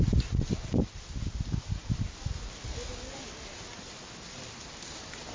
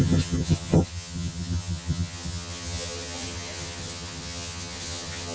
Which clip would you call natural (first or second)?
first